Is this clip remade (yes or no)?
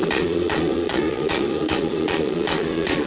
yes